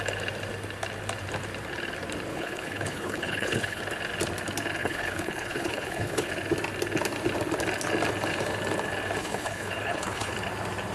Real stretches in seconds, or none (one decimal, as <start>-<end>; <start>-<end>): 0.0-2.3; 3.8-4.8; 6.3-9.2; 10.3-10.9